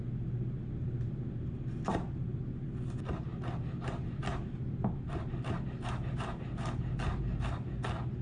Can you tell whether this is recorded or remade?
recorded